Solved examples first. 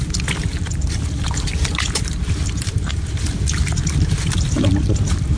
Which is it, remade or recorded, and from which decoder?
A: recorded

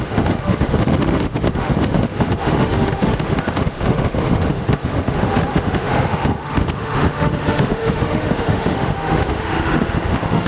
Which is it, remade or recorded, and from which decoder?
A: remade, autoencoder, DAC-VAE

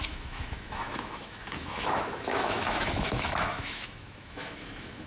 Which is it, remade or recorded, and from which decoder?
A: remade, autoencoder, DAC-VAE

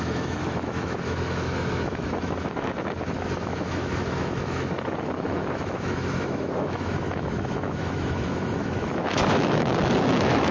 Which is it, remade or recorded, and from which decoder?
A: remade, autoencoder, DAC-VAE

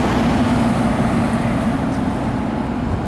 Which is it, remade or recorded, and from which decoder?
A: recorded